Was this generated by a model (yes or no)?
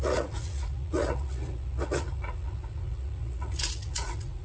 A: yes